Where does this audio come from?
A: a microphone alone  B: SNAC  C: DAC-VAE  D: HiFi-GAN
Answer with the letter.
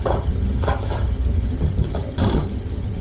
D